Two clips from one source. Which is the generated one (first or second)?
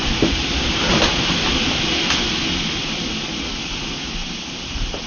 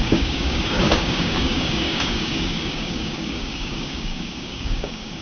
second